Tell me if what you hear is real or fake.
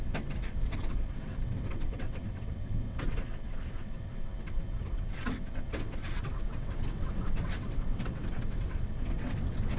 fake